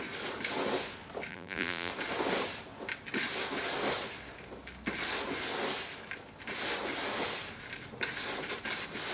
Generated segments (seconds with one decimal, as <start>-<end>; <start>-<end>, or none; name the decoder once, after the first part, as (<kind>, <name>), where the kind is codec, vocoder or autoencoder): 1.3-1.9 (vocoder, BigVGAN v2)